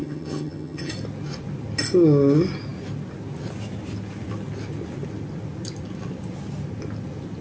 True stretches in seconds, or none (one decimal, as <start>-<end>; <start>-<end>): 0.9-7.4